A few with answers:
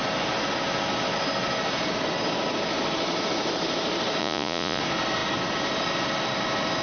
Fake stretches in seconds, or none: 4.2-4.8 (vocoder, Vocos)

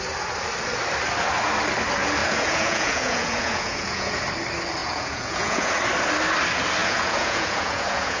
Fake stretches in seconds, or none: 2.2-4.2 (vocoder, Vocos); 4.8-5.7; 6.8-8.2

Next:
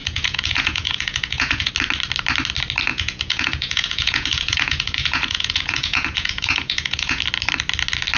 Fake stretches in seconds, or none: 0.0-1.7 (vocoder, Vocos); 2.9-7.2

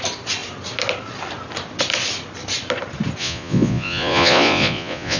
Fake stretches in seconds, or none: 3.2-5.2 (vocoder, Vocos)